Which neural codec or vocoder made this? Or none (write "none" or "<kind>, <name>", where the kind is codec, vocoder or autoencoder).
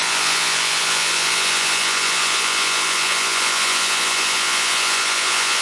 vocoder, Vocos